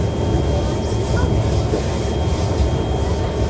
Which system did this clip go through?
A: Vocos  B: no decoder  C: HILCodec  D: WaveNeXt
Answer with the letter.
B